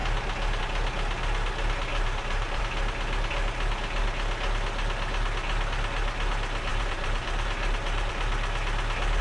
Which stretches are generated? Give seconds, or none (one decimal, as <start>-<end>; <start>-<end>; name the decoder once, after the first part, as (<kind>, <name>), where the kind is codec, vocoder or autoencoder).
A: 1.9-2.6 (vocoder, BigVGAN v2); 6.7-8.1